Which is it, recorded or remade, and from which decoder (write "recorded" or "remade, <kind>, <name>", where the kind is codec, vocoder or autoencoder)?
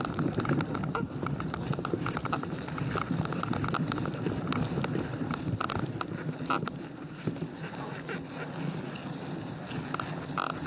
recorded